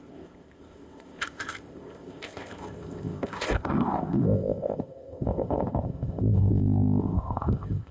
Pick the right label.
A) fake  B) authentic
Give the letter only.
A